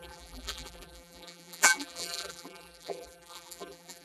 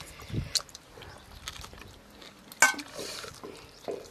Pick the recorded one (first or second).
second